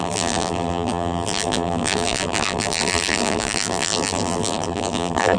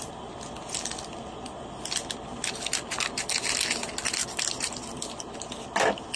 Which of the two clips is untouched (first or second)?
second